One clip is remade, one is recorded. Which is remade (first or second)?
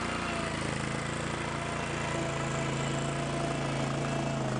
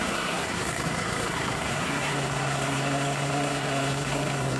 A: second